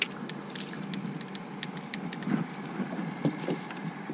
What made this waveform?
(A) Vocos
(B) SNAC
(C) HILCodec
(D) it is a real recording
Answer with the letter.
D